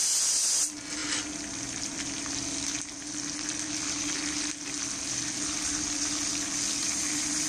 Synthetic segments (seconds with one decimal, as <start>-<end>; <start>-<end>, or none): none